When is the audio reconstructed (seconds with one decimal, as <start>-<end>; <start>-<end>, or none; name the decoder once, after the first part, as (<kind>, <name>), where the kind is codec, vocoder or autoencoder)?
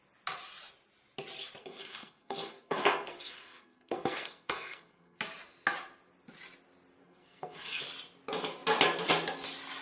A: 1.6-5.2 (codec, SNAC); 7.0-7.8